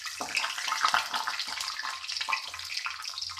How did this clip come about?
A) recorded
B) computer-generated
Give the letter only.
A